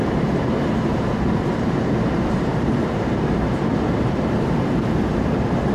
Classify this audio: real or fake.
fake